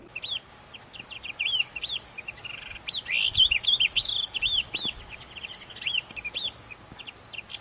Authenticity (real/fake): real